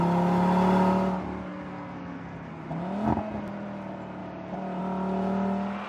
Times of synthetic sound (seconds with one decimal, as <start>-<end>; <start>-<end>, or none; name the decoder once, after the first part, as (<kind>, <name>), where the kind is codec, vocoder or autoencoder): 1.5-2.6 (codec, SNAC)